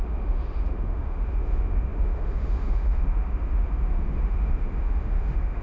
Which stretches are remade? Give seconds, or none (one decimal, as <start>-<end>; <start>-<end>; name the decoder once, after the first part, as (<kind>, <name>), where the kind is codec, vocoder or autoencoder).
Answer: 0.0-5.6 (autoencoder, DAC-VAE)